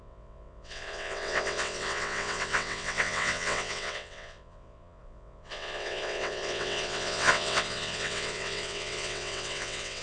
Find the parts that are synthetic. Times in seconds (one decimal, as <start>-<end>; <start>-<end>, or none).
0.0-10.0